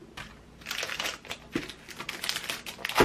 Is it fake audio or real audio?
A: real